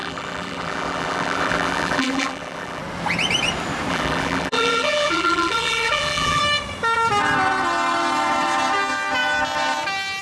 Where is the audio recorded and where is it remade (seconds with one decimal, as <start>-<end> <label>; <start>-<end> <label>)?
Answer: 0.0-2.8 remade; 2.8-3.9 recorded; 3.9-6.4 remade; 6.4-10.2 recorded